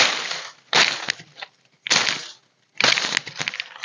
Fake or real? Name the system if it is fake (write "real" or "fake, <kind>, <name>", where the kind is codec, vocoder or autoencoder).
real